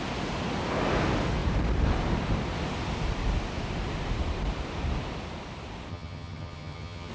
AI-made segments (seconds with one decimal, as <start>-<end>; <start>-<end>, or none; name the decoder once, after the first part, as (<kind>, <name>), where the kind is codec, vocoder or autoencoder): 5.9-7.1 (vocoder, HiFi-GAN)